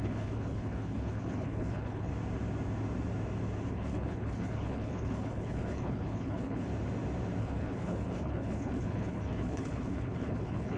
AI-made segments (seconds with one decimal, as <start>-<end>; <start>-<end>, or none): 0.0-2.1; 3.7-6.7; 7.4-10.8